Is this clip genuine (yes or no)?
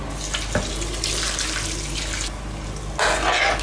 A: yes